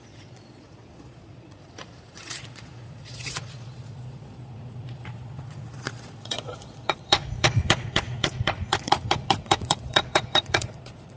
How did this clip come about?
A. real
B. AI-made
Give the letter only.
B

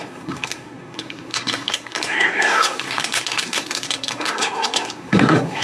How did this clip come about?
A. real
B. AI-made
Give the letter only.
B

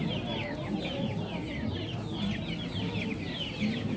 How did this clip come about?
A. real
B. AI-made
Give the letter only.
A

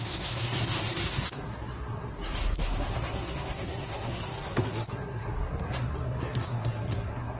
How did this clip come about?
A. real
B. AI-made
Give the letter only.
B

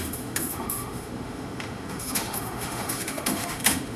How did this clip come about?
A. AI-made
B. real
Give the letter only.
A